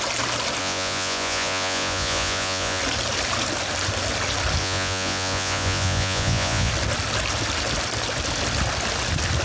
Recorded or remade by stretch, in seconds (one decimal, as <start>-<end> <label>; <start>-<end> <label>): 0.0-0.6 recorded; 0.6-2.8 remade; 2.8-4.6 recorded; 4.6-6.7 remade; 6.7-9.4 recorded